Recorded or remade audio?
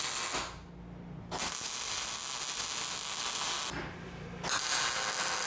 recorded